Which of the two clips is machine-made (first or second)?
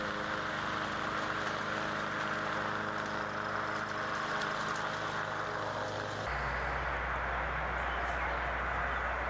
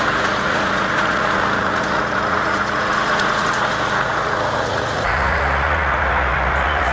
second